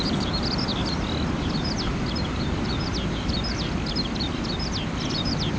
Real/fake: real